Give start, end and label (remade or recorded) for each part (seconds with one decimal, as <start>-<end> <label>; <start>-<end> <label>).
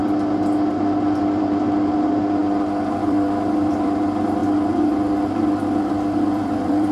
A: 0.0-1.2 recorded; 1.2-4.4 remade; 4.4-5.9 recorded; 5.9-6.9 remade